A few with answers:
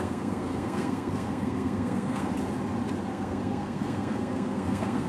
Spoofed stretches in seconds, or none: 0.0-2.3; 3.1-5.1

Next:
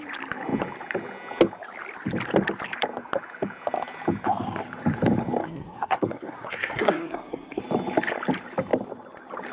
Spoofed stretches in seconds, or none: 5.4-7.6